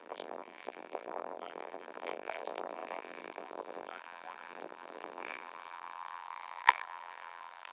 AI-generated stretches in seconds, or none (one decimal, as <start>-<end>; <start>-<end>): 0.0-7.7